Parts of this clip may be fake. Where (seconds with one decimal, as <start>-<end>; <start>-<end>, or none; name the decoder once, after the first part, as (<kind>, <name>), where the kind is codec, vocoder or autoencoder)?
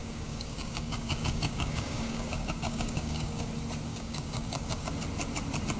0.0-3.5 (codec, DAC); 3.9-4.9